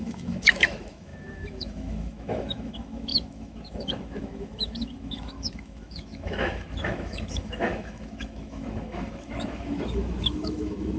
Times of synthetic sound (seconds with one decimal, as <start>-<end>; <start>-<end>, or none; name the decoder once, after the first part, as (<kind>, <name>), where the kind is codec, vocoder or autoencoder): 0.0-11.0 (autoencoder, DAC-VAE)